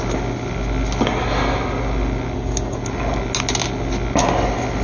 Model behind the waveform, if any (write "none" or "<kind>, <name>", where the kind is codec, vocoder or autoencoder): none